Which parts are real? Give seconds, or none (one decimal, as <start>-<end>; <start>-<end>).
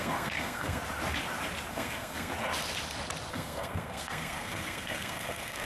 0.8-1.7; 2.3-3.3